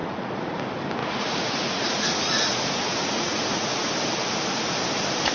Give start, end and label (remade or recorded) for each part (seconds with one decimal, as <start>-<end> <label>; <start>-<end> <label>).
0.0-0.6 remade; 0.6-1.0 recorded; 1.0-3.9 remade; 3.9-5.3 recorded